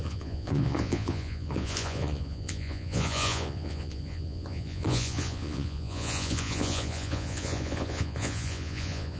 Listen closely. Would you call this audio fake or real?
fake